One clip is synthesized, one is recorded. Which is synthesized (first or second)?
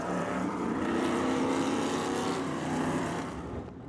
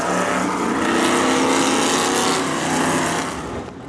first